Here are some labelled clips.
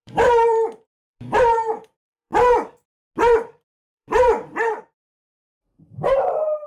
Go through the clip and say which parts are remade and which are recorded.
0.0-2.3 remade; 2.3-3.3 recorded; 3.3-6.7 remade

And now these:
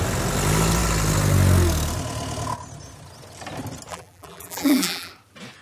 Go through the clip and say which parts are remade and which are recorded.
0.0-3.9 recorded; 3.9-5.1 remade; 5.1-5.6 recorded

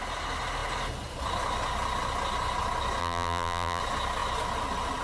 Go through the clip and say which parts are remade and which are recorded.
0.0-3.0 recorded; 3.0-3.8 remade; 3.8-5.0 recorded